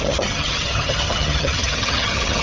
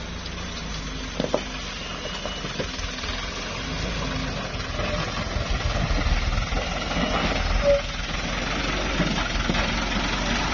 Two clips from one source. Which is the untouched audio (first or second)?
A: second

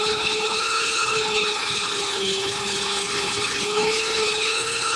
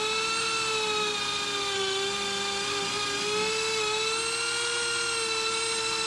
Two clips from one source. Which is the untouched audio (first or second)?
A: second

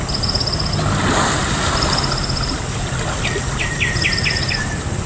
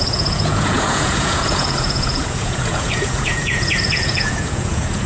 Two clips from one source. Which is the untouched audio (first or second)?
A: first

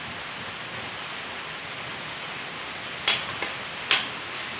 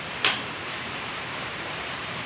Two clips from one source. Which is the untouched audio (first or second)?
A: first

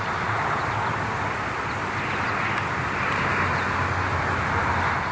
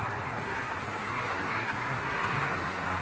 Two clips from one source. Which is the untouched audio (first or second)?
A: first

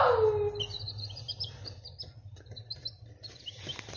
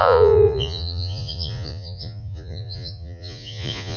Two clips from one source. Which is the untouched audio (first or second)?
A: first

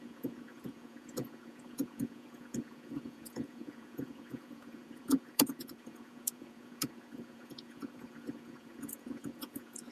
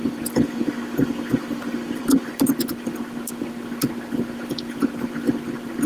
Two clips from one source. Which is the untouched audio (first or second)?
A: second